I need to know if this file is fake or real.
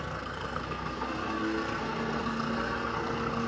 fake